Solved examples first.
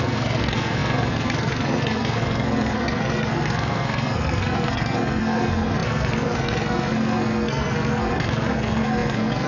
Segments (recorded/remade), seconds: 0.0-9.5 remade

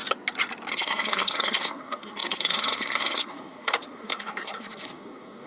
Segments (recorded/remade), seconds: 0.0-0.7 recorded; 0.7-5.5 remade

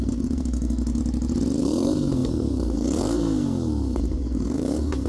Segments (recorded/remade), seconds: 0.0-1.0 remade; 1.0-1.6 recorded; 1.6-5.1 remade

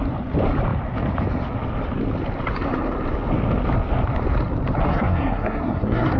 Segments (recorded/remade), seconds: 0.0-4.9 recorded; 4.9-6.2 remade

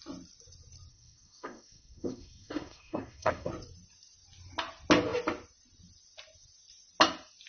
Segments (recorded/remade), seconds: 0.0-0.9 recorded; 0.9-3.5 remade; 3.5-7.5 recorded

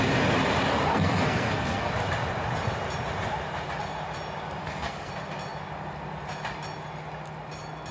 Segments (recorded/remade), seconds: 0.0-0.9 recorded; 0.9-1.9 remade; 1.9-4.6 recorded; 4.6-5.1 remade; 5.1-7.9 recorded

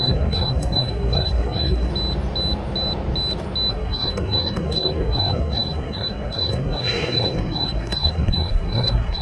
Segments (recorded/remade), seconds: 0.0-1.9 remade; 1.9-3.7 recorded; 3.7-9.2 remade

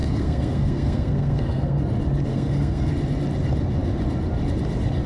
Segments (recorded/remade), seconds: 0.0-1.8 remade; 1.8-2.3 recorded; 2.3-2.9 remade; 2.9-5.1 recorded